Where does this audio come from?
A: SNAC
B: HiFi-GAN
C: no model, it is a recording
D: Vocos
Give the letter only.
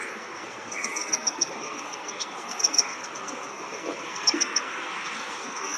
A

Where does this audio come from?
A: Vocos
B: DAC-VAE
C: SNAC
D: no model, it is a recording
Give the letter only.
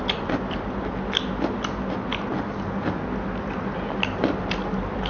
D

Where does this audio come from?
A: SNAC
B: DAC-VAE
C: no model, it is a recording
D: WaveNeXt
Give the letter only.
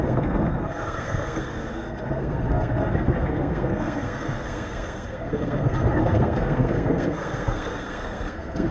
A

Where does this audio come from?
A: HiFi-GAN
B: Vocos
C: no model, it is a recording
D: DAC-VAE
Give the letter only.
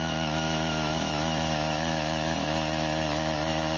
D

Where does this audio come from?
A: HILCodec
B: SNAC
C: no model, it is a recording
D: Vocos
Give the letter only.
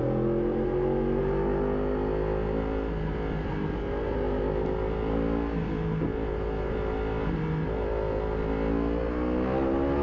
C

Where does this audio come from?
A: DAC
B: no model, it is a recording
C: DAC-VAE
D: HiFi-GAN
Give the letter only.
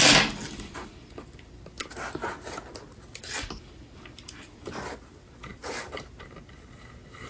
B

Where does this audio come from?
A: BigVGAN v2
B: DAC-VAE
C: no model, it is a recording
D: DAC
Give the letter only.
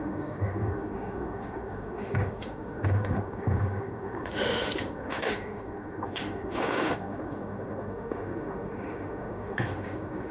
B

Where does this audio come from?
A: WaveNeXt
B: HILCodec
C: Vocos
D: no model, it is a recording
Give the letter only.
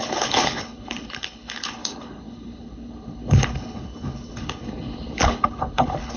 B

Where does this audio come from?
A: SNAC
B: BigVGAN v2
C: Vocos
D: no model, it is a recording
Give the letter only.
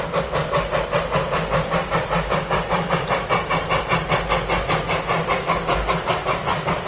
D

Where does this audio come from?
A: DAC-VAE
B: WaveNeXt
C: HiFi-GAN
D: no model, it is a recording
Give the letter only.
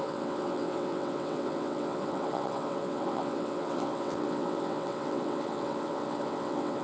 B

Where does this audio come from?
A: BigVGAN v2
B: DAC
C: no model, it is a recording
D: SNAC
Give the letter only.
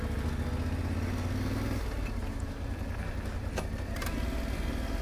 C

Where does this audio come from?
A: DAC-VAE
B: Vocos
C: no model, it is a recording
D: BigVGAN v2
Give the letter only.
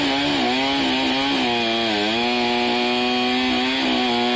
C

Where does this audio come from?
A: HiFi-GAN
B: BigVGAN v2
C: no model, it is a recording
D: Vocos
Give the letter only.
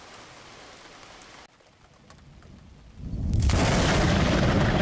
C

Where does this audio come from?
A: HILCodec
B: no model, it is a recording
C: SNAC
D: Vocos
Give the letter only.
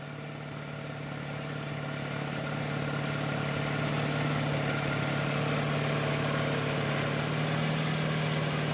B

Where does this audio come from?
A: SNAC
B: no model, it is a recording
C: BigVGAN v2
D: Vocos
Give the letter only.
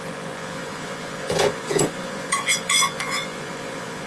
D